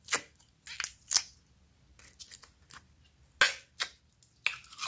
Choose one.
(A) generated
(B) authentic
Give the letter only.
B